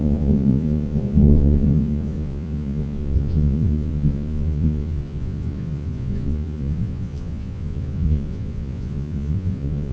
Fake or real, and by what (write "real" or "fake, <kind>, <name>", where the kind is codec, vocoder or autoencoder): fake, vocoder, Vocos